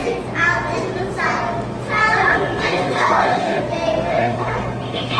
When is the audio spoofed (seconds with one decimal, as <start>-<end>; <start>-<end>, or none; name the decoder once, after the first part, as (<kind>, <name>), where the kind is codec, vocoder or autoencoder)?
2.3-3.6 (codec, SNAC); 4.1-5.2